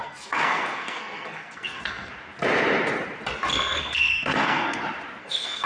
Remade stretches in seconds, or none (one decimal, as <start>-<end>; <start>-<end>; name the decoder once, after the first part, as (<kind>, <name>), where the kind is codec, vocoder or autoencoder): 0.0-2.1 (codec, SNAC); 3.5-4.8; 5.2-5.7